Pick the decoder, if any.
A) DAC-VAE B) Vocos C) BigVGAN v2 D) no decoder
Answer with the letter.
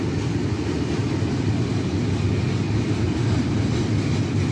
D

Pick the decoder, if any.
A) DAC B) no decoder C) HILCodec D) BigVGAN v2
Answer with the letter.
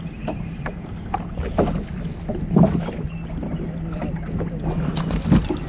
B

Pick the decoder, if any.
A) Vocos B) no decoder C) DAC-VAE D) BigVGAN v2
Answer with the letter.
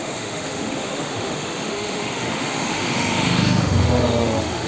C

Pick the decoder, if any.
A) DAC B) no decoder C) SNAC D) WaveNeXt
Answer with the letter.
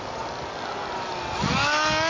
B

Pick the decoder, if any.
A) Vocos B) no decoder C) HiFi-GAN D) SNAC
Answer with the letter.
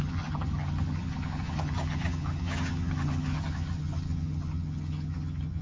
C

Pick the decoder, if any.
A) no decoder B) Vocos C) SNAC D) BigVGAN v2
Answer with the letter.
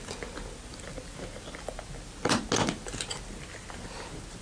A